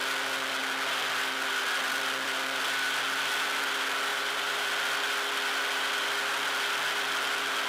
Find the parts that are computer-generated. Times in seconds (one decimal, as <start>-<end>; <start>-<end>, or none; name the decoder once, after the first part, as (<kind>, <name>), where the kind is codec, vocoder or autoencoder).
4.1-4.7 (vocoder, BigVGAN v2)